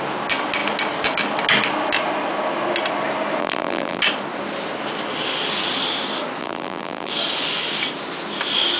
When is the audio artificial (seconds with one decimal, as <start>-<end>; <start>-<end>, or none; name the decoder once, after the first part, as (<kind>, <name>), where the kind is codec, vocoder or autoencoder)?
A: 3.4-4.0 (vocoder, BigVGAN v2); 6.4-7.1